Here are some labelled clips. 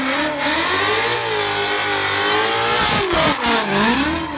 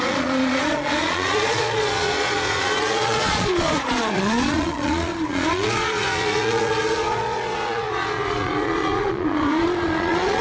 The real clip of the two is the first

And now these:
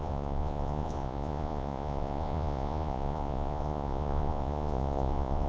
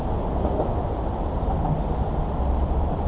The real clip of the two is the second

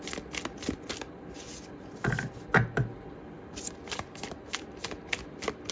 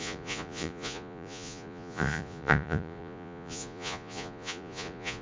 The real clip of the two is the first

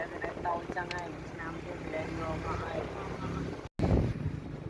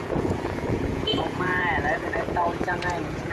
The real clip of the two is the first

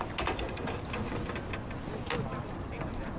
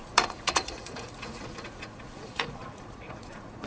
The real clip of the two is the first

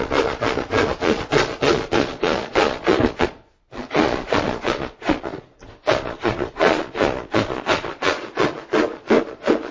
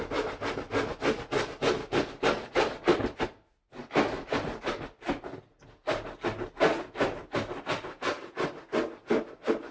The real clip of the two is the second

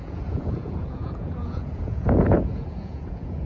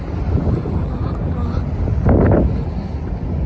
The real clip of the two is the second